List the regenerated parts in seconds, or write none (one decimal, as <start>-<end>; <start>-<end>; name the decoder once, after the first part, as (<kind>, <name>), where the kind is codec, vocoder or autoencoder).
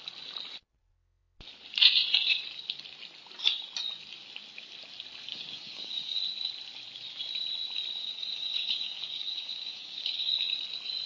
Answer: 5.3-6.2 (codec, DAC); 8.0-10.3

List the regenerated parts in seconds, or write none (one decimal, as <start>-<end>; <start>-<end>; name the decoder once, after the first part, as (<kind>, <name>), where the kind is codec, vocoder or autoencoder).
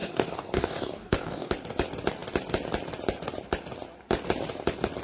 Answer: 0.0-1.5 (codec, DAC)